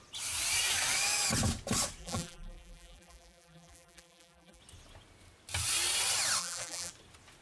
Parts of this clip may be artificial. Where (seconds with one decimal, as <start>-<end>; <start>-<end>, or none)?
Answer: 2.0-4.6; 6.4-6.9